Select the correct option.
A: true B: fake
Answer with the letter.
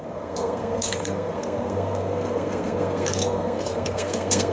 B